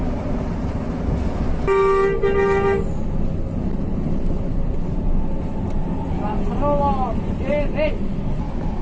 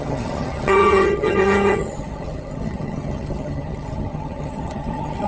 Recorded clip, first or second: first